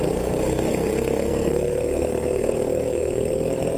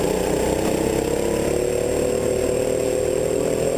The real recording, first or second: second